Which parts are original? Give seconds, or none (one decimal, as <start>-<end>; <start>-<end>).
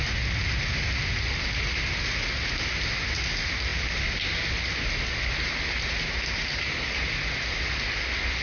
0.0-8.4